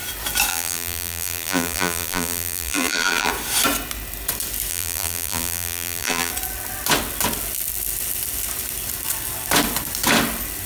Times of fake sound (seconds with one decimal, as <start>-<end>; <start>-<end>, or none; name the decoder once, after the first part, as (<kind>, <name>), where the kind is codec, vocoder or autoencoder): 0.5-3.3 (vocoder, BigVGAN v2); 4.7-6.3